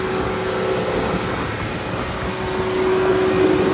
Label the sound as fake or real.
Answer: real